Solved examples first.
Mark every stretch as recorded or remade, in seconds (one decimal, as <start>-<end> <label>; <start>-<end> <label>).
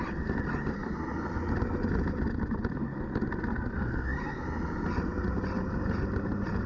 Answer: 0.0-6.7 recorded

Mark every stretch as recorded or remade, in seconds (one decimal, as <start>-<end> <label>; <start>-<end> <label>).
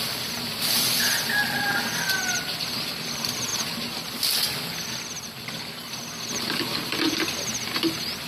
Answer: 0.0-1.4 recorded; 1.4-2.6 remade; 2.6-8.3 recorded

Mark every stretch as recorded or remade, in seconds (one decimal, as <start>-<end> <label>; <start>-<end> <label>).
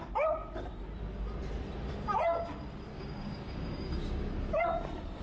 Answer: 0.0-2.9 recorded; 2.9-4.3 remade; 4.3-5.2 recorded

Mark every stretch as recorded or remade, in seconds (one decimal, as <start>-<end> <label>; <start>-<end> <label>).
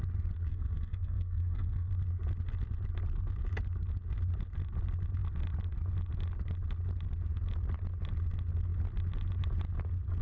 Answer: 0.0-0.5 recorded; 0.5-1.9 remade; 1.9-10.2 recorded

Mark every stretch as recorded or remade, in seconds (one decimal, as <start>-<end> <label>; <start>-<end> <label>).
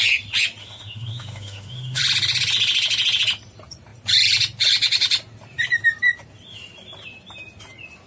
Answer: 0.0-0.6 recorded; 0.6-2.0 remade; 2.0-8.1 recorded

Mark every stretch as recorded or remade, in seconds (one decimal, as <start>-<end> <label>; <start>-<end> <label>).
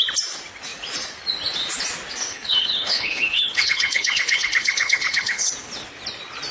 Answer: 0.0-2.3 recorded; 2.3-5.5 remade; 5.5-6.5 recorded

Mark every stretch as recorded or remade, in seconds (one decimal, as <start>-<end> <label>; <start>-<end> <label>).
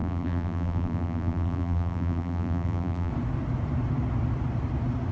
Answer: 0.0-3.1 remade; 3.1-5.1 recorded